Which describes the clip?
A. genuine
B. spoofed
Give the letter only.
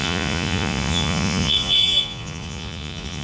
B